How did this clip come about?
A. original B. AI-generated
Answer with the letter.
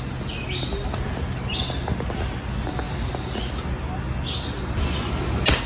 A